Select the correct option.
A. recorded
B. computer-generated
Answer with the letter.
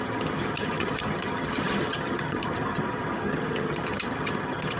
B